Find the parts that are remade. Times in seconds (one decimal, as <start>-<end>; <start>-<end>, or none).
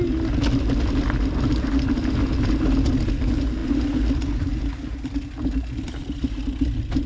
none